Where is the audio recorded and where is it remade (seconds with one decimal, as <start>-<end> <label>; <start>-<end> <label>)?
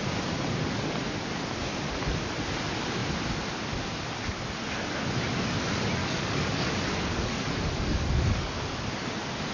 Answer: 0.0-6.0 recorded; 6.0-8.5 remade; 8.5-9.5 recorded